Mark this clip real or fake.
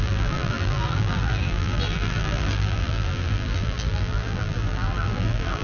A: fake